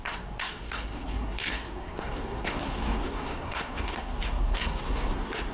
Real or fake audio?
fake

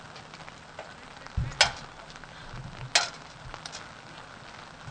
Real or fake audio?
real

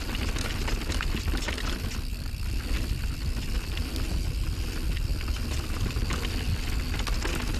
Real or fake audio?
real